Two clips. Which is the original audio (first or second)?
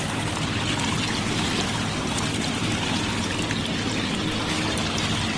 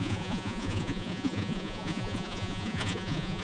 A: first